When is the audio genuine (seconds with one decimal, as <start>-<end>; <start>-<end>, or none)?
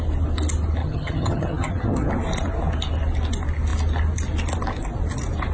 0.0-0.8; 2.1-5.5